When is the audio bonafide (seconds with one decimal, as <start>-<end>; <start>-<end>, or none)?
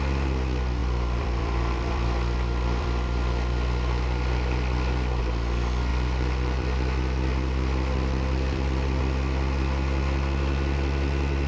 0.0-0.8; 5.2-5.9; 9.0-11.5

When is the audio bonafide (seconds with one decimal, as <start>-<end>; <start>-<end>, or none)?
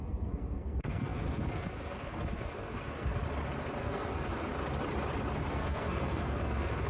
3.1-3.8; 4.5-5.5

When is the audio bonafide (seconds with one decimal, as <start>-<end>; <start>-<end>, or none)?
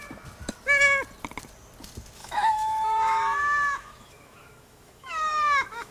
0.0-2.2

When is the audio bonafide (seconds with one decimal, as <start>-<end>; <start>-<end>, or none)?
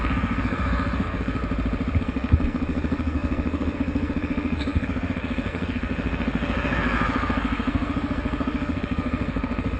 1.4-2.0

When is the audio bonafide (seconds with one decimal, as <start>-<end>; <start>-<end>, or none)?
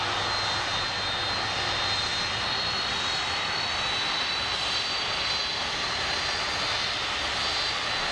0.0-8.1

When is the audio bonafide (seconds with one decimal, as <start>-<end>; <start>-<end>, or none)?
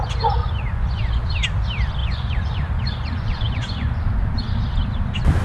0.0-0.4; 1.0-2.0; 4.0-5.4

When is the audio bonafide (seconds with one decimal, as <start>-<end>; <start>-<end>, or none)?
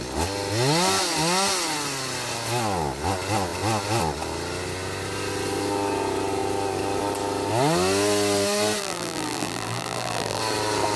0.0-8.8; 10.4-11.0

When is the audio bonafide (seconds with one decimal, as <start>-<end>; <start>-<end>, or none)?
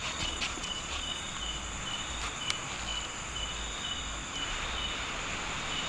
1.3-5.9